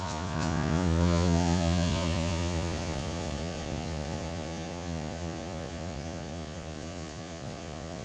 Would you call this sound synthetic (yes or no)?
yes